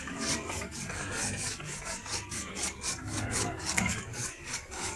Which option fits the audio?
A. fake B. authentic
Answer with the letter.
A